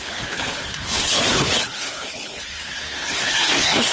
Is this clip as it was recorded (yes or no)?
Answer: no